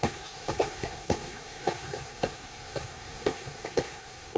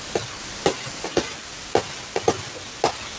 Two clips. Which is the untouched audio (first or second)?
second